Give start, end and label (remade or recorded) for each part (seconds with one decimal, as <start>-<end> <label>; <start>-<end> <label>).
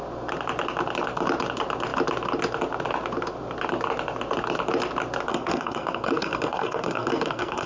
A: 0.0-5.3 recorded; 5.3-7.7 remade